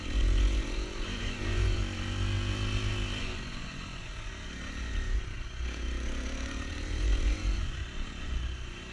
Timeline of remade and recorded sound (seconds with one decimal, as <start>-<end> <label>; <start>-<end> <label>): 0.0-1.8 remade; 1.8-3.2 recorded; 3.2-8.9 remade